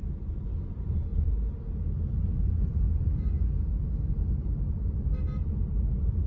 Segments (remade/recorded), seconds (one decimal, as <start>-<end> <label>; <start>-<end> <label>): 0.0-6.3 recorded